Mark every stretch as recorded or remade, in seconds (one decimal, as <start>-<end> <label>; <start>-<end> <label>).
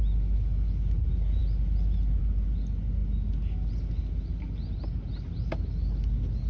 0.0-6.5 recorded